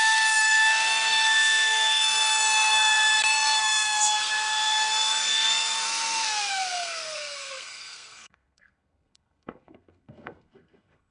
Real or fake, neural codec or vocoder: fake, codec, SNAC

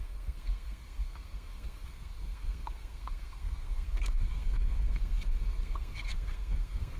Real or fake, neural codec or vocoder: fake, codec, SNAC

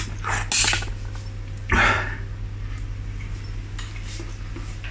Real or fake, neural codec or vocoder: real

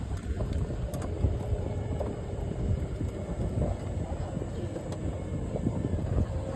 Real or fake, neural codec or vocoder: real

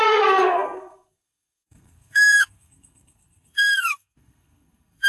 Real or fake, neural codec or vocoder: fake, codec, SNAC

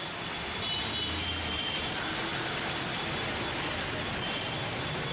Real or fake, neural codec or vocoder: real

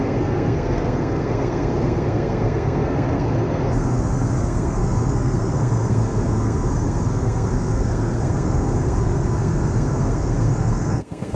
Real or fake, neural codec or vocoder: fake, codec, SNAC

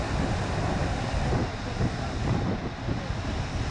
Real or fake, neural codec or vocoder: real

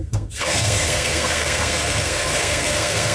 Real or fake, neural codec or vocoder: fake, codec, SNAC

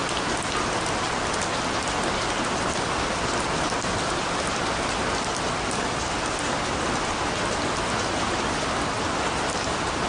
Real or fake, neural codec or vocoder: real